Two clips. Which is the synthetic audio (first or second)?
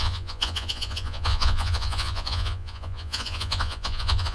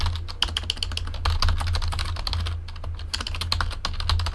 first